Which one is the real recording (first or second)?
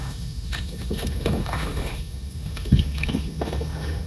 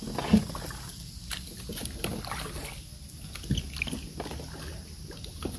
second